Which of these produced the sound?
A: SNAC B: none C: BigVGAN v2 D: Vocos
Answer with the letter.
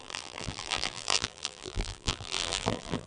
C